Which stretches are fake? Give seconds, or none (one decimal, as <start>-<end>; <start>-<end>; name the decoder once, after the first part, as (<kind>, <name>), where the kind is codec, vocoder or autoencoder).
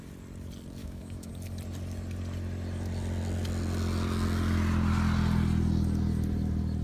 0.8-1.3 (autoencoder, DAC-VAE)